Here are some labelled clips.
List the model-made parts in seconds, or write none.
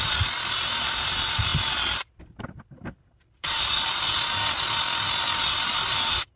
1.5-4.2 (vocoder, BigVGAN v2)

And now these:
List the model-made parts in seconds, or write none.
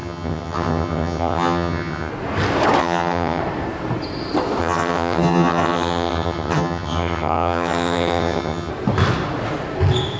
0.0-2.1 (vocoder, HiFi-GAN); 2.8-3.4; 4.6-8.7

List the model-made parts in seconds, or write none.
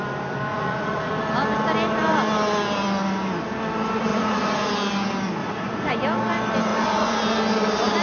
0.5-1.1 (vocoder, Vocos); 4.1-4.7; 5.4-5.9; 6.7-7.2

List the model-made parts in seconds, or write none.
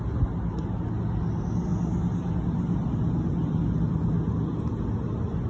none